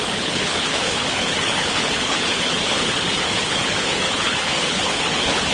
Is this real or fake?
fake